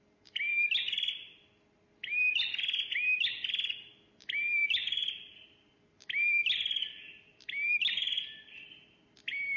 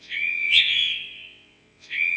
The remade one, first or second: second